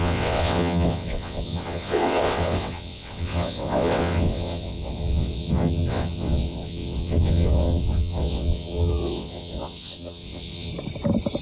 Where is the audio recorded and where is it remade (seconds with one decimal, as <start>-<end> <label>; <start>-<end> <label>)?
0.0-10.7 remade; 10.7-11.4 recorded